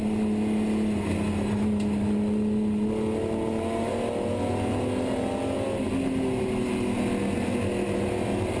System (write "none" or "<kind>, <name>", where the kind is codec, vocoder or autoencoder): none